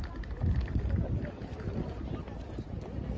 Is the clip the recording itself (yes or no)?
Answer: yes